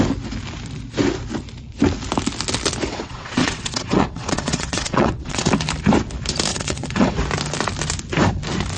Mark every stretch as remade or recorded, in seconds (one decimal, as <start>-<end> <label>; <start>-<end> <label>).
0.0-2.9 recorded; 2.9-5.5 remade; 5.5-6.5 recorded; 6.5-7.2 remade; 7.2-8.8 recorded